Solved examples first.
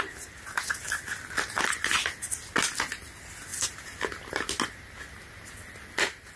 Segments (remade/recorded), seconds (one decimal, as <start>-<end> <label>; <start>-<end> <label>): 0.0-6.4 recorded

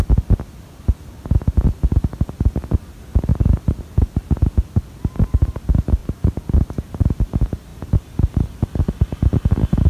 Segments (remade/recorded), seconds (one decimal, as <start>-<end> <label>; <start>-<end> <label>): 0.0-3.3 recorded; 3.3-3.8 remade; 3.8-6.0 recorded; 6.0-6.5 remade; 6.5-7.7 recorded; 7.7-9.9 remade

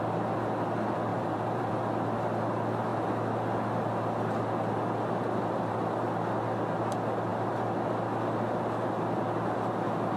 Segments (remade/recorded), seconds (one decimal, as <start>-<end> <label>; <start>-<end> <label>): 0.0-1.1 recorded; 1.1-1.7 remade; 1.7-10.2 recorded